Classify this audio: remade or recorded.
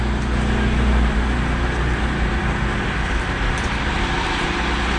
recorded